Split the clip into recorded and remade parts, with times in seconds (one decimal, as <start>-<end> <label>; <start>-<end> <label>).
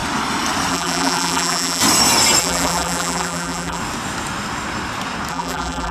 0.0-0.7 recorded; 0.7-1.8 remade; 1.8-2.4 recorded; 2.4-3.8 remade; 3.8-5.3 recorded; 5.3-5.9 remade